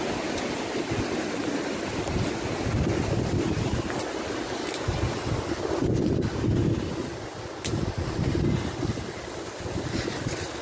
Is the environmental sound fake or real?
real